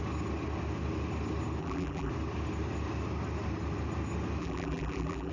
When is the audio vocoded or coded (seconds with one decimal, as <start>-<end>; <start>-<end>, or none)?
1.6-2.1; 4.4-5.3